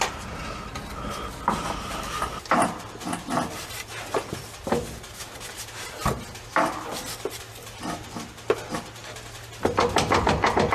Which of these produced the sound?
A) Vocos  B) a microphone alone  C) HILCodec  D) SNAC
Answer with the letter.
B